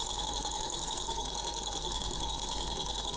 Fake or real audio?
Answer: fake